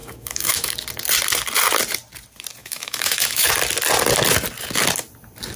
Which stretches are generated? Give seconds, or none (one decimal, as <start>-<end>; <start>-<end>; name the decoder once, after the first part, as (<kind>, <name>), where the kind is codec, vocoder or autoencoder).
0.0-0.7 (autoencoder, DAC-VAE); 2.6-3.5